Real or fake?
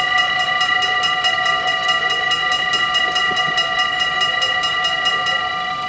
real